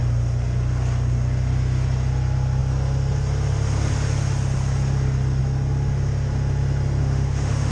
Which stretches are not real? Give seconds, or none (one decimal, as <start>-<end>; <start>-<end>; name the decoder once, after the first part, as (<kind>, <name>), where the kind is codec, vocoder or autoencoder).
7.0-7.7 (autoencoder, DAC-VAE)